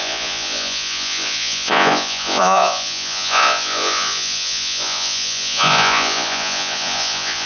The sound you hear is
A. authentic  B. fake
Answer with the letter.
B